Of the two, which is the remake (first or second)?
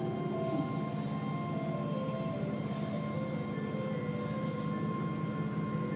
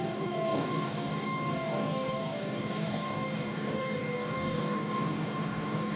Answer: second